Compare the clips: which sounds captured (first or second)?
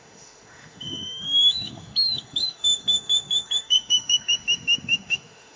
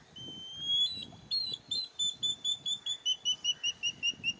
second